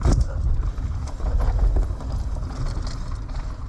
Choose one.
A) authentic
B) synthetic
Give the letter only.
A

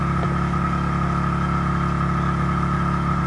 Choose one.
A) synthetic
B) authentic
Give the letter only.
B